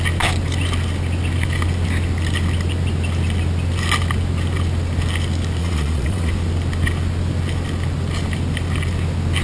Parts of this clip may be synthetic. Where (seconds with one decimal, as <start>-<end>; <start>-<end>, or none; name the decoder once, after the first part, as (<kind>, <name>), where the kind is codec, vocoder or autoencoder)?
5.6-6.3 (vocoder, Vocos)